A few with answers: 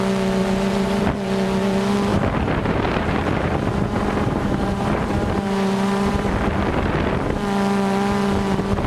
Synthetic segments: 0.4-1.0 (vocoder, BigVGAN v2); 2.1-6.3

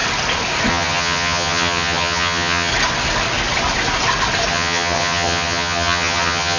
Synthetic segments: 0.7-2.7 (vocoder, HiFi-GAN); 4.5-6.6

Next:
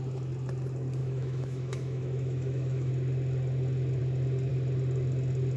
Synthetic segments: 1.0-2.9 (autoencoder, DAC-VAE)

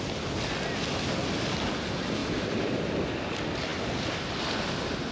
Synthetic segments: 2.2-2.9 (vocoder, BigVGAN v2)